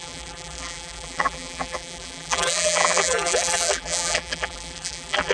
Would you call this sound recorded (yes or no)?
no